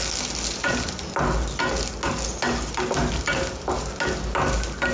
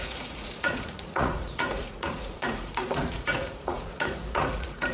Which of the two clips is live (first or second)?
first